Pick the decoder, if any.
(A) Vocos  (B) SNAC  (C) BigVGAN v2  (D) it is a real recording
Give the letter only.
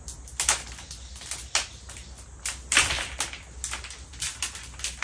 D